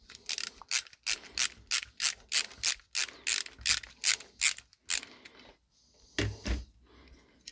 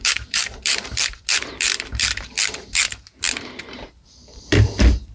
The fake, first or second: second